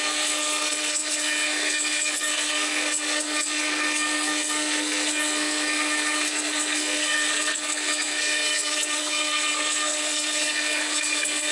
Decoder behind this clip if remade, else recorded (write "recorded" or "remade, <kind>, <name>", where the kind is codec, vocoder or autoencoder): remade, codec, SNAC